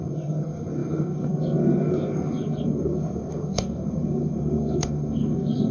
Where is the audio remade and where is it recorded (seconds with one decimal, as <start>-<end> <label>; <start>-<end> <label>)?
0.0-5.7 remade